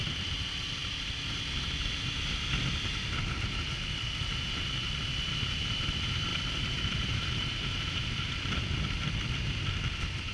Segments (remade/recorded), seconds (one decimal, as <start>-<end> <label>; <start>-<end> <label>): 0.0-0.8 remade; 0.8-5.3 recorded; 5.3-10.3 remade